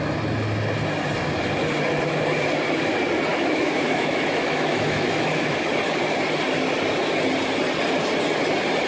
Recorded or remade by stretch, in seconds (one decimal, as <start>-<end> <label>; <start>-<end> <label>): 0.0-3.3 recorded; 3.3-5.5 remade; 5.5-8.9 recorded